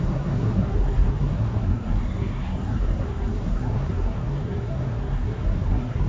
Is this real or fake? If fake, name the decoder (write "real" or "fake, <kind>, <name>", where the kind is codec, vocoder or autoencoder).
fake, codec, SNAC